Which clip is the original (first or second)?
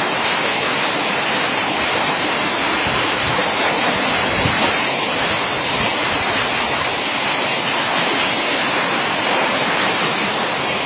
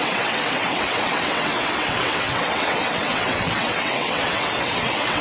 first